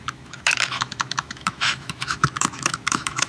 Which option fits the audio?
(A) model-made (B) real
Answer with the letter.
A